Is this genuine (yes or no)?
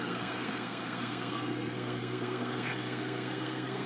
no